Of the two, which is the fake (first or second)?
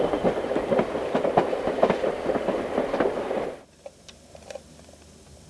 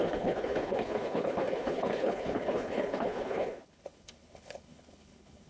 second